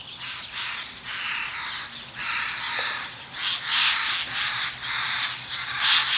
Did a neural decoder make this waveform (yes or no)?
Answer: no